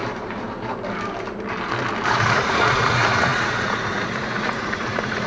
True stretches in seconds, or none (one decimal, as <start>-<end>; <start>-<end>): 0.0-2.1